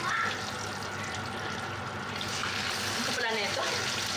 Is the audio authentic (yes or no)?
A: yes